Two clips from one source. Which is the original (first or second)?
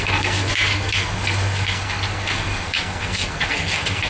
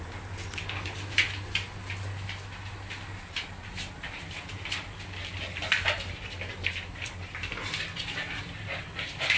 second